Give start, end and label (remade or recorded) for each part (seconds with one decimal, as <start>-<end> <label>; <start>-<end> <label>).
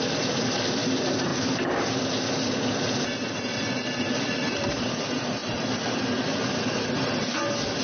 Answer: 0.0-1.3 remade; 1.3-4.0 recorded; 4.0-7.8 remade